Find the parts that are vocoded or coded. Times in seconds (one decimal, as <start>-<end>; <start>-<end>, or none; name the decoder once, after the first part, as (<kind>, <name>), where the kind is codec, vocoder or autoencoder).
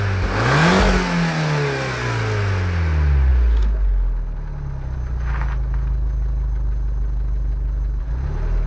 none